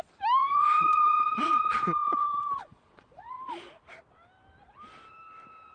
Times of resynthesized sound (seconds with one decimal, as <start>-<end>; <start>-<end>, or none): 0.4-3.8